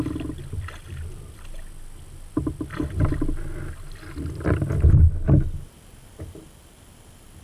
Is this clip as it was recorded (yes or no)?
yes